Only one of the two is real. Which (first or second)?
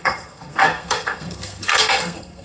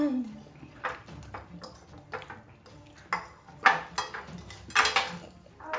second